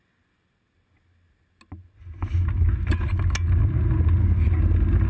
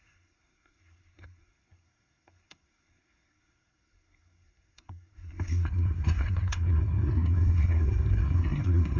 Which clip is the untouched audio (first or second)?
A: first